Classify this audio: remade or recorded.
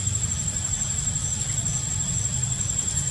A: recorded